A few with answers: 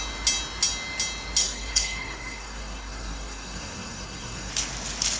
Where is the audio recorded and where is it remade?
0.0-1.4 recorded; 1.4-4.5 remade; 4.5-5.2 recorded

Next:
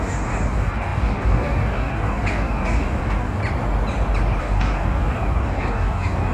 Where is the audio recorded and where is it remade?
0.0-3.4 remade; 3.4-4.4 recorded; 4.4-6.3 remade

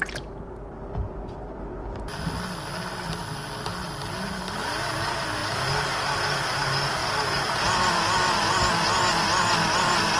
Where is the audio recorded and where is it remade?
0.0-10.2 recorded

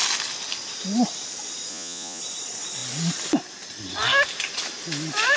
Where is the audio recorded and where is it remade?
0.0-1.7 recorded; 1.7-2.2 remade; 2.2-5.4 recorded